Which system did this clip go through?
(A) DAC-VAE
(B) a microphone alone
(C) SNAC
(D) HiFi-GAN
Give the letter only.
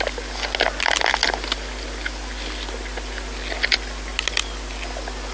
B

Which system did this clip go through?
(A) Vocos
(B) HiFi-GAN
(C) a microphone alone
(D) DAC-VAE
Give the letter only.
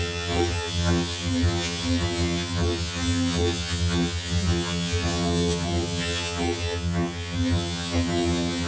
B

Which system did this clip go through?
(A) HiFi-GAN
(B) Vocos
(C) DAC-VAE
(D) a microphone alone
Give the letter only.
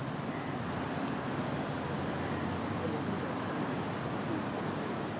D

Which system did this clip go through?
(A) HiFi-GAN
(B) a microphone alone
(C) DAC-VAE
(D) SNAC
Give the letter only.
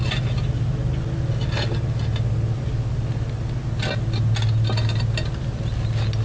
B